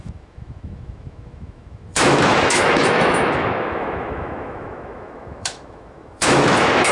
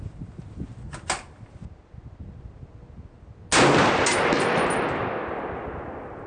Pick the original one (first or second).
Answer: second